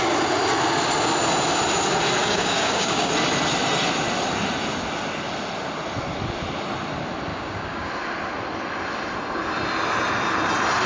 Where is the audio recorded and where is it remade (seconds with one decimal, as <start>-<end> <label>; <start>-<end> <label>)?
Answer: 0.0-2.2 recorded; 2.2-3.1 remade; 3.1-7.3 recorded; 7.3-7.9 remade; 7.9-10.9 recorded

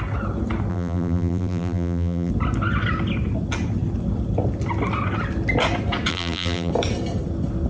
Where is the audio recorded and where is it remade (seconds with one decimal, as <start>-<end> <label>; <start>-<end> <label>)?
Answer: 0.0-0.7 recorded; 0.7-2.3 remade; 2.3-6.1 recorded; 6.1-6.7 remade; 6.7-7.7 recorded

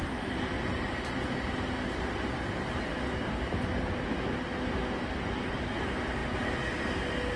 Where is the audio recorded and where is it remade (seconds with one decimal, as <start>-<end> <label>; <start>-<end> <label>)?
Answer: 0.0-7.4 recorded

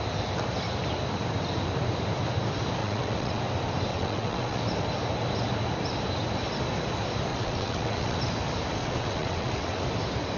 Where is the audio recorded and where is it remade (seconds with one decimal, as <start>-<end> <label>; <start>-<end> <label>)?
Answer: 0.0-2.8 recorded; 2.8-3.4 remade; 3.4-3.9 recorded; 3.9-4.6 remade; 4.6-7.3 recorded; 7.3-8.2 remade; 8.2-8.8 recorded; 8.8-9.8 remade; 9.8-10.4 recorded

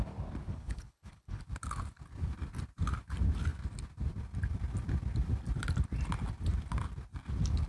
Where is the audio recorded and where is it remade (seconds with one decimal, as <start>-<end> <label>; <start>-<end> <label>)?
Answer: 0.0-0.5 recorded; 0.5-1.4 remade; 1.4-7.7 recorded